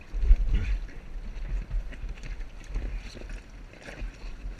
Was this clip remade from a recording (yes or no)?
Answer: no